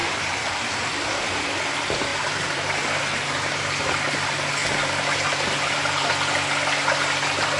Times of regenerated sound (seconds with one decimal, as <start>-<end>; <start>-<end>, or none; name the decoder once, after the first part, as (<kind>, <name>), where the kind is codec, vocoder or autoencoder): 0.0-1.6 (vocoder, BigVGAN v2); 2.1-3.0